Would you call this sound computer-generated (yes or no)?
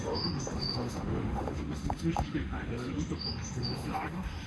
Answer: yes